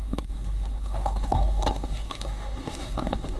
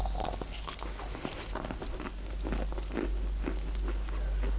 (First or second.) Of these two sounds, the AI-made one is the first